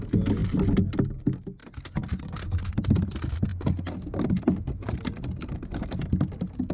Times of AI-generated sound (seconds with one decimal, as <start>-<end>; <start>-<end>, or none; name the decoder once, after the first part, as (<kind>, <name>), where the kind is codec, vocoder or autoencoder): none